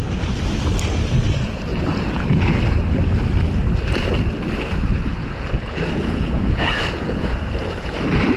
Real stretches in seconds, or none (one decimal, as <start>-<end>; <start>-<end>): 0.0-1.7; 2.6-5.2; 7.3-8.4